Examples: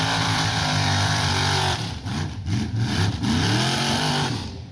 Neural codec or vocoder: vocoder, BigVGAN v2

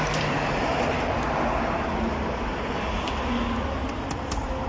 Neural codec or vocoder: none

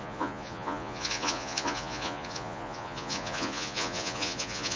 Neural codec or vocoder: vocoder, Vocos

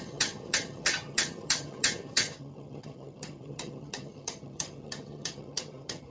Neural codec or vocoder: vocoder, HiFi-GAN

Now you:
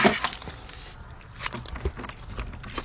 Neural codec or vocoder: none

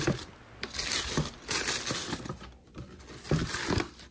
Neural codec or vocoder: none